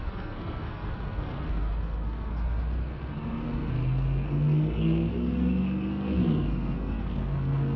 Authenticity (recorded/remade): remade